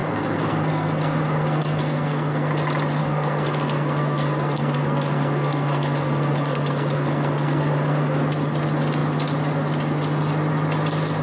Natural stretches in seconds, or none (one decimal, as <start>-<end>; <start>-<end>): 2.5-3.0; 8.2-11.2